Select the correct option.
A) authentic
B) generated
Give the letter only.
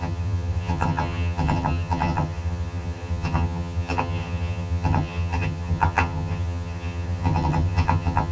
B